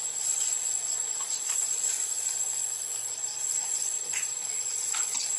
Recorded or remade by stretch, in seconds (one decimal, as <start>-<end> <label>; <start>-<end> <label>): 0.0-2.0 remade; 2.0-3.1 recorded; 3.1-5.4 remade